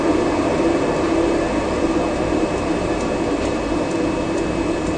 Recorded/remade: remade